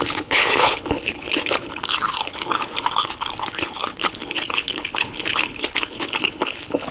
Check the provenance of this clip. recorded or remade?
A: remade